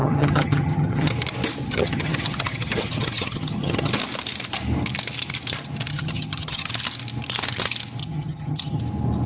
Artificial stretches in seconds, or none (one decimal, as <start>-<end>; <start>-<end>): 0.0-1.1; 1.6-3.9; 5.9-6.7; 8.0-8.8